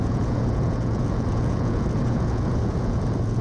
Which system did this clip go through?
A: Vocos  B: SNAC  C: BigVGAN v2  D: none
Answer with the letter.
A